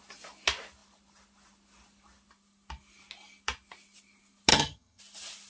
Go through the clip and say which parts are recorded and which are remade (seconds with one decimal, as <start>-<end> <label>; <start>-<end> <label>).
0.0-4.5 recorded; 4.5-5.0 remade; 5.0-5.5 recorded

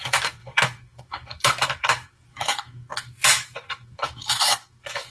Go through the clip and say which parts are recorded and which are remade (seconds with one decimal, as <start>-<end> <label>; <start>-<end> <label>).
0.0-5.1 remade

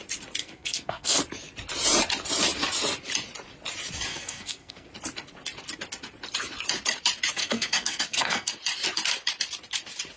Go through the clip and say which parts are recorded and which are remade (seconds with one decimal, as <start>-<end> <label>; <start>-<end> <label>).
0.0-0.4 recorded; 0.4-1.2 remade; 1.2-4.1 recorded; 4.1-4.9 remade; 4.9-7.4 recorded; 7.4-8.5 remade; 8.5-10.2 recorded

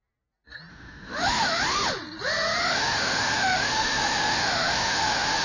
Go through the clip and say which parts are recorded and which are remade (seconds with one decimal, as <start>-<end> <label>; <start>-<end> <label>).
0.0-0.7 recorded; 0.7-1.6 remade; 1.6-2.6 recorded; 2.6-5.4 remade

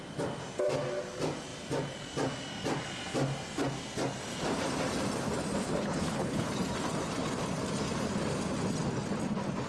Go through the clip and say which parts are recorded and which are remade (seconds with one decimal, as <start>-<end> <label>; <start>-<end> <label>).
0.0-5.6 recorded; 5.6-6.5 remade; 6.5-9.7 recorded

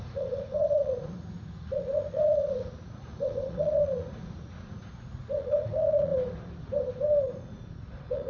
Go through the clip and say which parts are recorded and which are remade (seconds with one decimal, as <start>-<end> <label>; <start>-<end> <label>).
0.0-6.1 remade; 6.1-7.2 recorded; 7.2-8.3 remade

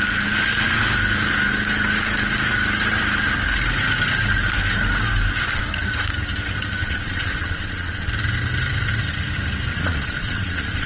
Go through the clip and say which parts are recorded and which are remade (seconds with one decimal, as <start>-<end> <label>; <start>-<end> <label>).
0.0-6.8 recorded; 6.8-8.1 remade; 8.1-9.7 recorded; 9.7-10.9 remade